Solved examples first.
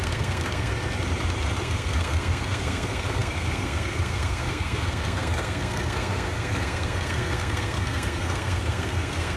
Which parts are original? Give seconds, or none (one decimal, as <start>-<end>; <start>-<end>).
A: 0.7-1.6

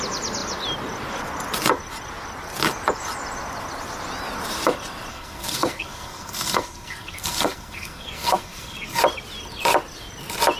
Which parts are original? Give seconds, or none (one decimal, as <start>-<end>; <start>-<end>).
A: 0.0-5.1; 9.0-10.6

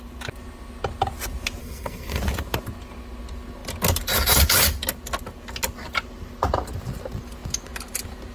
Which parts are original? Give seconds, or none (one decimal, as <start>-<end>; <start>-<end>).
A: 0.0-1.6; 2.2-8.3